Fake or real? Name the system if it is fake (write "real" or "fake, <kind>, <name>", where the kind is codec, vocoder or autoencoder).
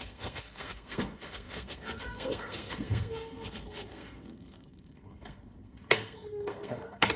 fake, codec, SNAC